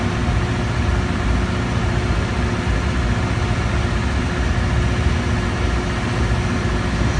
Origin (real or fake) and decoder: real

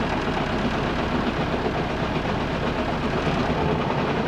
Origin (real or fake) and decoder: real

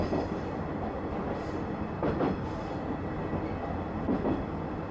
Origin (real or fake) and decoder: real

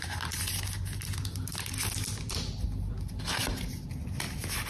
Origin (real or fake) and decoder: real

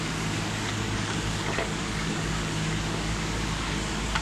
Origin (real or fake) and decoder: fake, codec, DAC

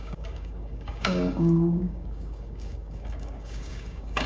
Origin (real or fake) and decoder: fake, codec, DAC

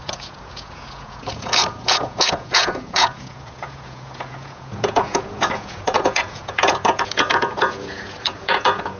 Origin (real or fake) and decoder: fake, vocoder, Vocos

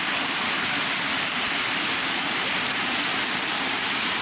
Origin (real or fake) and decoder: fake, vocoder, BigVGAN v2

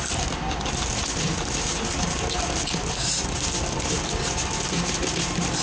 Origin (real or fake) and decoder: real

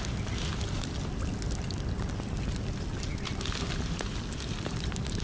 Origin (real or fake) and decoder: real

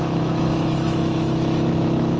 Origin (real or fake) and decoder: fake, autoencoder, DAC-VAE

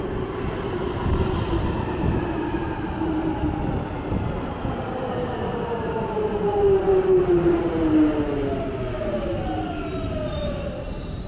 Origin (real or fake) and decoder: real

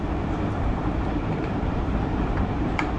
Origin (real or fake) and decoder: fake, vocoder, BigVGAN v2